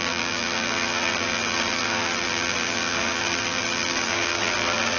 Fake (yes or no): yes